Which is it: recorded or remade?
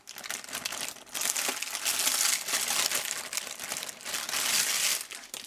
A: recorded